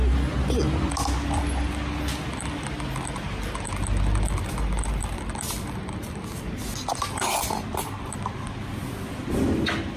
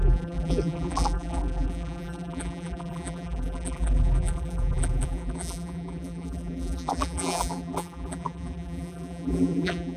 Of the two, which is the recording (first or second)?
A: first